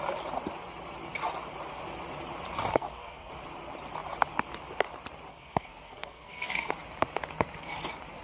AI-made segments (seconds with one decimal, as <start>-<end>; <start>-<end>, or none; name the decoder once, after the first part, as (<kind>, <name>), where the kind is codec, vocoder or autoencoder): 2.7-3.3 (codec, SNAC); 5.3-6.7